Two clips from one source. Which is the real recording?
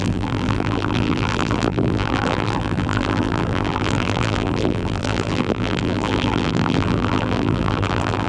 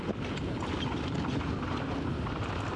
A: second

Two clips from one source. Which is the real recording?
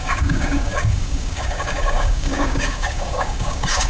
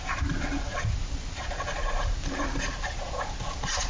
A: second